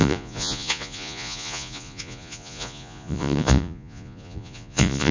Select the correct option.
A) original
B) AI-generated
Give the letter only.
B